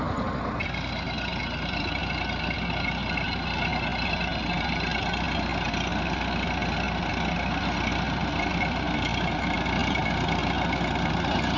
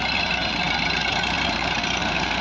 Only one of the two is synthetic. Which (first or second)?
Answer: second